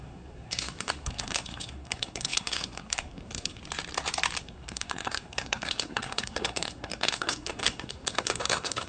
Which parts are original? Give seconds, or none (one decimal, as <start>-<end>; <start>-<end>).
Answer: 3.6-4.4